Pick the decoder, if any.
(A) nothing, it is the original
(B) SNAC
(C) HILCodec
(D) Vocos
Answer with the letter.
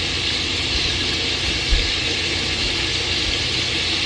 A